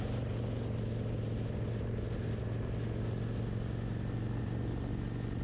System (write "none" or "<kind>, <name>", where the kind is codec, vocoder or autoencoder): none